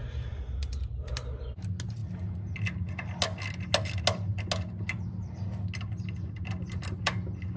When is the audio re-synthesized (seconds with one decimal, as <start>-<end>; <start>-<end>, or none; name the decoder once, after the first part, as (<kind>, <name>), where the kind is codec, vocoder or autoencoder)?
none

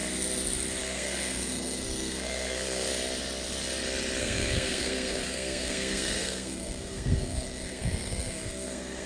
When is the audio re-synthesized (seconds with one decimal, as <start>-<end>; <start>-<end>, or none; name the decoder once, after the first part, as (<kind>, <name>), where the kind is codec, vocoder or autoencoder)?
0.8-2.9 (codec, SNAC); 4.2-9.1

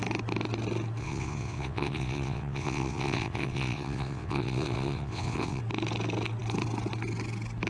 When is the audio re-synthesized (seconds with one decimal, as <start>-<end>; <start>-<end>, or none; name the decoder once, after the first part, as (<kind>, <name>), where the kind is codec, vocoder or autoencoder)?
1.0-5.6 (vocoder, WaveNeXt)

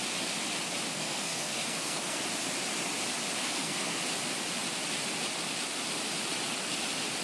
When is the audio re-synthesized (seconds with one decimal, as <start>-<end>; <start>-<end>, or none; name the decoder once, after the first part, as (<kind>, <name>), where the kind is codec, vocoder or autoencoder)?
0.9-2.2 (codec, SNAC); 3.4-4.0

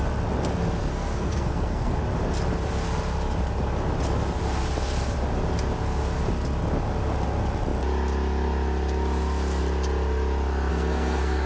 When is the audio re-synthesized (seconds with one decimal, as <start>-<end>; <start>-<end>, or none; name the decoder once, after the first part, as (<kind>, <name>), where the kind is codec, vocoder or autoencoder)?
0.8-2.0 (codec, SNAC); 10.7-11.5